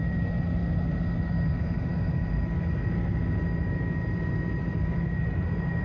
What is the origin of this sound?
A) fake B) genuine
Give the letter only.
B